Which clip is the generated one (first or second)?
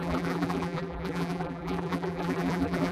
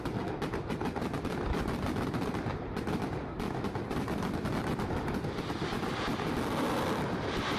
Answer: first